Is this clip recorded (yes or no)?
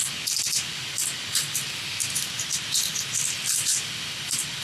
yes